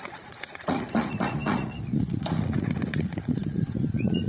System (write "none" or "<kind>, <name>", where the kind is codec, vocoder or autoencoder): vocoder, Vocos